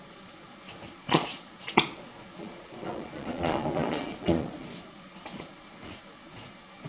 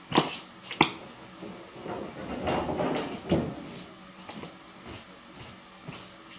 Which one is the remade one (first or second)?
first